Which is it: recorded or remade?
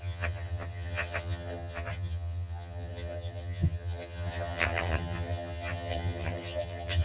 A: remade